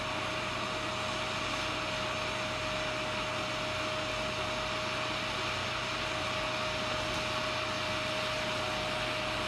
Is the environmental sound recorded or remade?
recorded